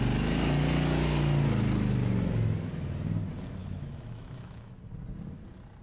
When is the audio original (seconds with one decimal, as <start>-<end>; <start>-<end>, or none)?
0.0-3.6; 4.7-5.8